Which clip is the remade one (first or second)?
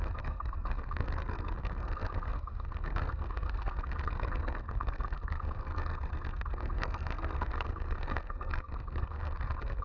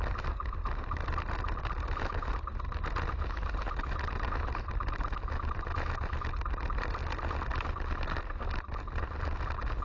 first